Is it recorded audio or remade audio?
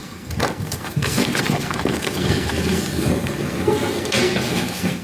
remade